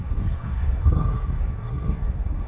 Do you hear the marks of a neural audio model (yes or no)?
yes